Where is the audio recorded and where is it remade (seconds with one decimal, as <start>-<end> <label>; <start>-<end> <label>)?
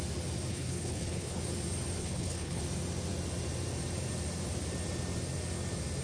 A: 0.0-0.5 recorded; 0.5-1.4 remade; 1.4-2.0 recorded; 2.0-2.6 remade; 2.6-6.0 recorded